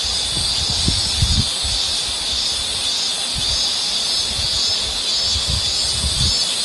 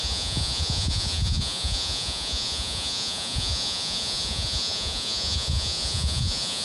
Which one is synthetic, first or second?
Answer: second